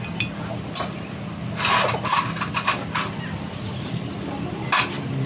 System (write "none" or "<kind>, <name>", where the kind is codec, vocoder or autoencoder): none